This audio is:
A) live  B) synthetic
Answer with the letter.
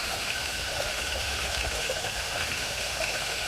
B